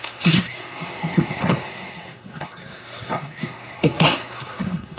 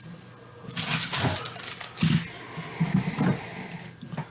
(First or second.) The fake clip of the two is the first